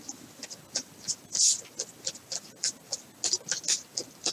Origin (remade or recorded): recorded